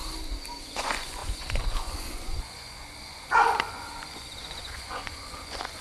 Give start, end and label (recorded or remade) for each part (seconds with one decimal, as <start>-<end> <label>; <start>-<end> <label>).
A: 0.0-0.6 recorded; 0.6-5.8 remade